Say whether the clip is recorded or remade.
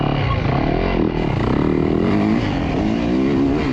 recorded